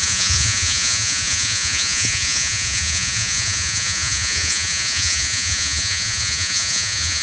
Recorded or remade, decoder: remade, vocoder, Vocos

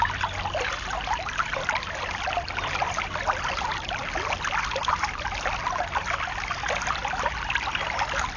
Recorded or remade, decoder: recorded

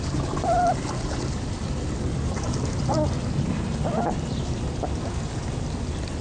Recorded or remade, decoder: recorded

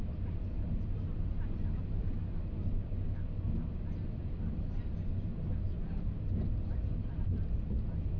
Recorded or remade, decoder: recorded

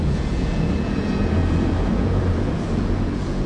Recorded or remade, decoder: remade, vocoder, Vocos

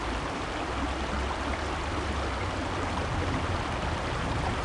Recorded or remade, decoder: recorded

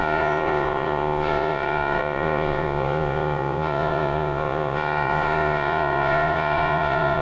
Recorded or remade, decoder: remade, vocoder, Vocos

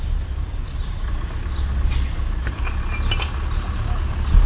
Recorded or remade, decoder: recorded